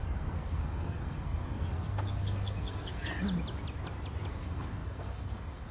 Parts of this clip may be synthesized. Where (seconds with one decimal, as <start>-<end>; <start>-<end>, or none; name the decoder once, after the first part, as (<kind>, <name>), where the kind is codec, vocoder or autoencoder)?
0.0-3.1 (codec, SNAC); 4.3-5.7